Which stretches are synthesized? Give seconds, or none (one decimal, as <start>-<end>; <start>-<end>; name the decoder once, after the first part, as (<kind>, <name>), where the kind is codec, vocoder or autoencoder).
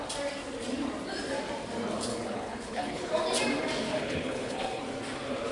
2.1-3.1 (codec, HILCodec); 3.9-4.8